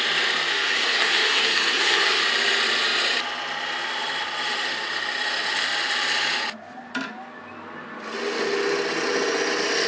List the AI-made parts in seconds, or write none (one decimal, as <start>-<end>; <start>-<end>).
0.5-2.2